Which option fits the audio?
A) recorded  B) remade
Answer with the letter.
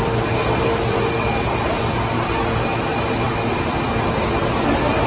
A